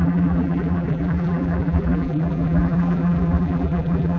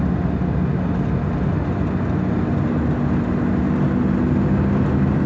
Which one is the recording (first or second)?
second